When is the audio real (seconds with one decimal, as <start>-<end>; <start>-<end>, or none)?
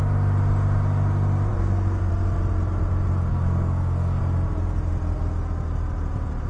0.0-1.5; 2.1-3.3; 4.2-6.5